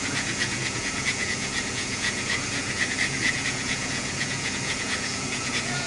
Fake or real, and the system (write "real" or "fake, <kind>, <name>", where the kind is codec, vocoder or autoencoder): fake, vocoder, Vocos